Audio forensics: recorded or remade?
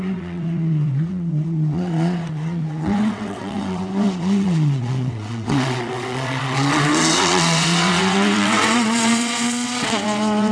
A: remade